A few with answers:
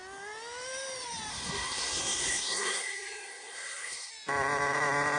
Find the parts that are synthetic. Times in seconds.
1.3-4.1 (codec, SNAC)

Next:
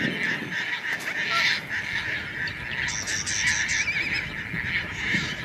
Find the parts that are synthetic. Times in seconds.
none

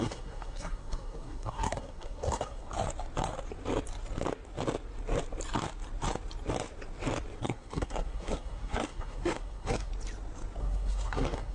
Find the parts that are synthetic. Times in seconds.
0.0-2.7 (codec, SNAC); 7.4-9.9; 10.6-11.5

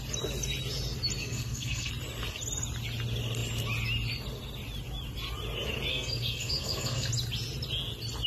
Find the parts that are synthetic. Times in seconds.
1.2-1.9 (codec, SNAC); 5.9-7.1

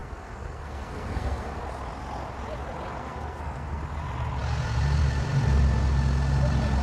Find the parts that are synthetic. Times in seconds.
0.0-1.6 (codec, SNAC); 3.0-3.8

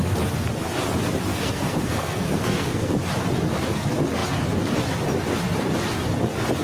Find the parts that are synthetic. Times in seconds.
1.3-2.9 (codec, SNAC)

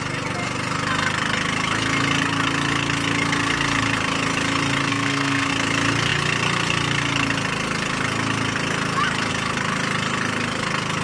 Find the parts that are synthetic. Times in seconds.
4.9-5.5 (codec, SNAC)